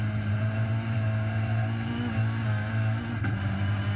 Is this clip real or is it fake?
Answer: real